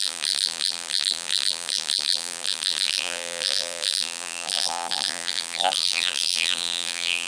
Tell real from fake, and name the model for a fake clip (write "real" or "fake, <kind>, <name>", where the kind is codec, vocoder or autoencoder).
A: fake, vocoder, BigVGAN v2